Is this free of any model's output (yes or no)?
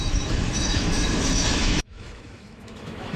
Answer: no